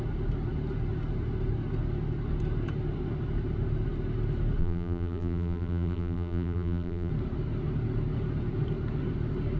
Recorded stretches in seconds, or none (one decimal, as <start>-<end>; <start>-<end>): 0.0-4.6; 7.1-9.6